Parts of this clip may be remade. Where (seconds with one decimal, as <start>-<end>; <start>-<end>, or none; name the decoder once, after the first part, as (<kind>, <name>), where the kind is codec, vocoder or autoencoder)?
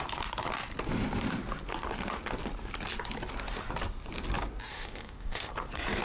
4.7-5.5 (codec, ZipCodec)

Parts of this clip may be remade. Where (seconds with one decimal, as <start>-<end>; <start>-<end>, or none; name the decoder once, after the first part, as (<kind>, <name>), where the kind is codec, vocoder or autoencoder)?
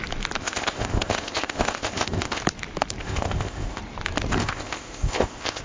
0.4-2.4 (codec, ZipCodec); 3.0-3.8; 4.4-5.6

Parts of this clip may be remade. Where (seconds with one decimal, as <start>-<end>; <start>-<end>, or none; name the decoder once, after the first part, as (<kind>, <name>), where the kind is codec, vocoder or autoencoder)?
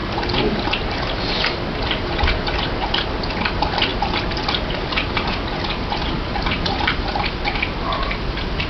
none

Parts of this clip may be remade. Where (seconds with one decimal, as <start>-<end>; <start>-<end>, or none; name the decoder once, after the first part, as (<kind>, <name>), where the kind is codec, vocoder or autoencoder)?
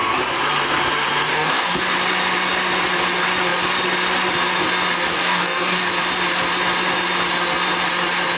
1.3-1.8 (codec, DAC); 5.1-5.9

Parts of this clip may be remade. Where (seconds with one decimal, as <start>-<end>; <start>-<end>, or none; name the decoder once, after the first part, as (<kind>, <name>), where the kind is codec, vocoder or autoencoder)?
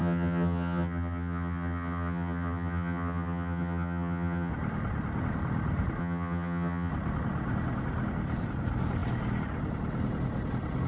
0.0-4.5 (vocoder, HiFi-GAN); 6.0-6.9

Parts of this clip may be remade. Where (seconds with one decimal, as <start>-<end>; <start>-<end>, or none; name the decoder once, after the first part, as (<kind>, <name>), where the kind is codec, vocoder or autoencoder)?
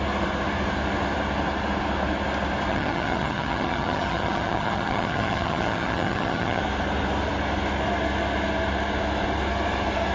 2.7-6.6 (vocoder, HiFi-GAN)